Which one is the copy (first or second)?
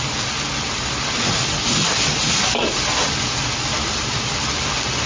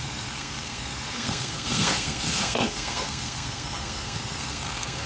second